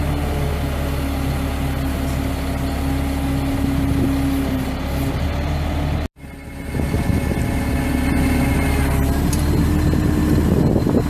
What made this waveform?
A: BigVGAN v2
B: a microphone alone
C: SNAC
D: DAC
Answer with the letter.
B